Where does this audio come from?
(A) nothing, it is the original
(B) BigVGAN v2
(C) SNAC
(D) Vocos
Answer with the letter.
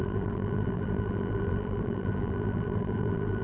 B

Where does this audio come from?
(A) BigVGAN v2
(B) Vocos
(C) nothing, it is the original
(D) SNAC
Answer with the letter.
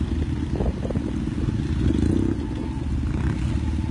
C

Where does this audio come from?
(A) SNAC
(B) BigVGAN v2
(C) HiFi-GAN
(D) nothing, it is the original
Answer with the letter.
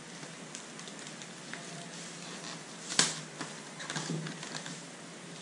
D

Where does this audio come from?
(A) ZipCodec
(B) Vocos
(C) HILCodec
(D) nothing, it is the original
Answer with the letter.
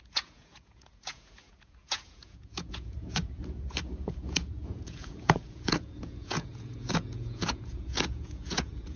B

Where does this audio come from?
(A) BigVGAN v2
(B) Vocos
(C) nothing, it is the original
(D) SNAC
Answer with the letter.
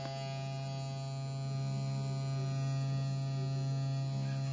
C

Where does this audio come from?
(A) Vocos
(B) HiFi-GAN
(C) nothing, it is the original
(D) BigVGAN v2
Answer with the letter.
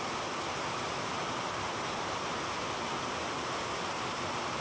C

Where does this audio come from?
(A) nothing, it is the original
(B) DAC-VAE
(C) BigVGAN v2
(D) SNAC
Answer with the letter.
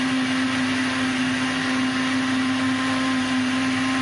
A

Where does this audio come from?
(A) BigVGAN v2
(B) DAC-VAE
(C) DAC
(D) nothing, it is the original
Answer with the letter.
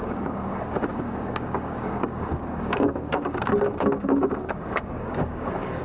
C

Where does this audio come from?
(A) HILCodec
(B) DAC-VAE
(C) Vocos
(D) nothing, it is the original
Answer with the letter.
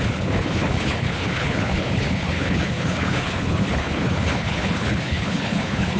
A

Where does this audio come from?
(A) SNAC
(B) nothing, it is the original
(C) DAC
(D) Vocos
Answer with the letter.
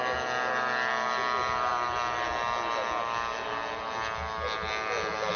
B